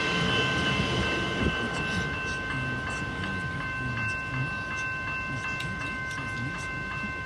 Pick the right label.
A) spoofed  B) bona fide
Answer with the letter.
B